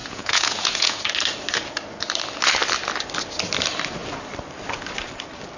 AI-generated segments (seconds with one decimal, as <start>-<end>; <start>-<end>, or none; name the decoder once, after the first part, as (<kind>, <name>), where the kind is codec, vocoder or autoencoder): 0.0-1.0 (vocoder, Vocos)

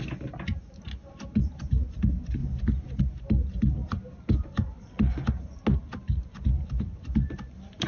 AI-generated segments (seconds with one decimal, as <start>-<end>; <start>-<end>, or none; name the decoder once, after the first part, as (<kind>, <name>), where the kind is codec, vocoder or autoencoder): none

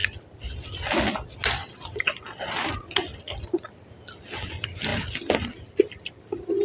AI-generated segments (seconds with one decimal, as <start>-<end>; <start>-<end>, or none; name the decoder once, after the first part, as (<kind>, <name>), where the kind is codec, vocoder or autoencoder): none

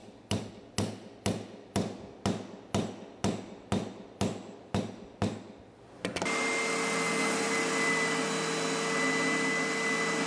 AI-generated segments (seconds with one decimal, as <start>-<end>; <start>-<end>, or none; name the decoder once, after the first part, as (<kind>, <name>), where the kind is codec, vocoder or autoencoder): none

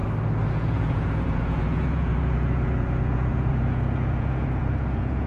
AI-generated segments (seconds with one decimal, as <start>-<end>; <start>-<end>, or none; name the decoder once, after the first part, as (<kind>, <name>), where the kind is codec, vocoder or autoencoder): 0.5-5.3 (vocoder, Vocos)

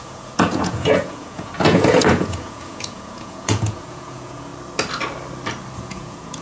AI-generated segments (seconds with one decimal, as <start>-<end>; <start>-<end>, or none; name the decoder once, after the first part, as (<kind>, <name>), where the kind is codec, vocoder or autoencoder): 0.0-4.5 (vocoder, Vocos); 5.8-6.4

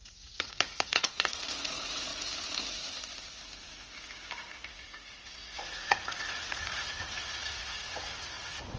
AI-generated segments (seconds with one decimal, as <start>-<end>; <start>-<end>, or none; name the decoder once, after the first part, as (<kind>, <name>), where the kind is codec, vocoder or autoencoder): 0.0-2.1 (vocoder, Vocos); 4.7-8.8